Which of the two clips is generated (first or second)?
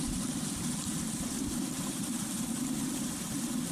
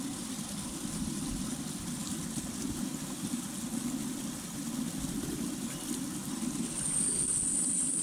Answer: first